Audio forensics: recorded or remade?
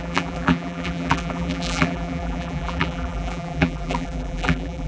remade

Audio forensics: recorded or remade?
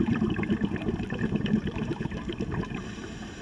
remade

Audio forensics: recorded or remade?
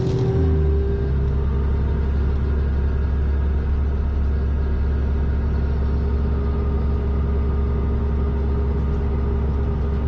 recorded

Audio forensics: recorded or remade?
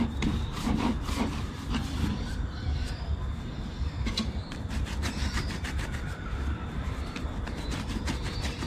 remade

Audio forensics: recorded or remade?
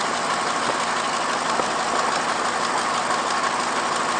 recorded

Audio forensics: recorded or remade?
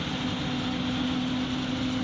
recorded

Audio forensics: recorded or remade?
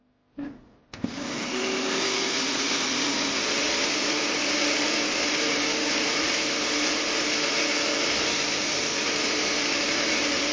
recorded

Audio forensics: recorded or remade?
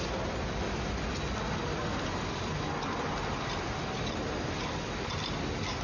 recorded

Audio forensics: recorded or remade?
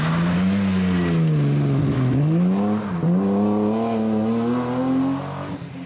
recorded